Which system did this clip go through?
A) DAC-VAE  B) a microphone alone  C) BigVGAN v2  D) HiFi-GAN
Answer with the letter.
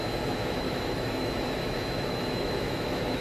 A